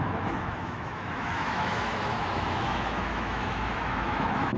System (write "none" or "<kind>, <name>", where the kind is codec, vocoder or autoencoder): autoencoder, DAC-VAE